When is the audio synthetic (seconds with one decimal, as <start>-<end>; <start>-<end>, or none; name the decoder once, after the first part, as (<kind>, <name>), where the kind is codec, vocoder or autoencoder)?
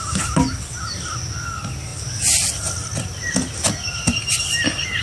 none